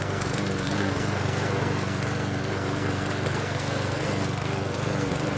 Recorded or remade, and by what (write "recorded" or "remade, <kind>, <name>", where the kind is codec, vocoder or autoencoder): remade, codec, SNAC